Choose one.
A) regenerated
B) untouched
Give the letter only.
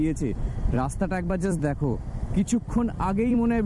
A